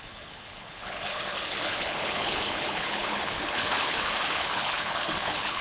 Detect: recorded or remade remade